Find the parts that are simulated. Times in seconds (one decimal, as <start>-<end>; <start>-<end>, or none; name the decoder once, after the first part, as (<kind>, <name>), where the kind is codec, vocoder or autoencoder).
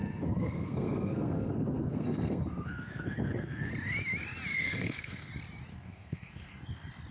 0.0-3.7 (codec, SNAC); 4.5-5.3; 5.7-6.6